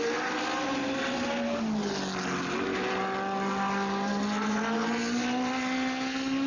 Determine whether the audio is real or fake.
real